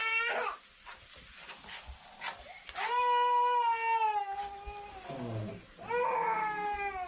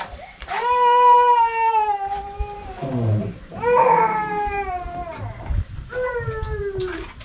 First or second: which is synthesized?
second